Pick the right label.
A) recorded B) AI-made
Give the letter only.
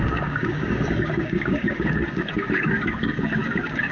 B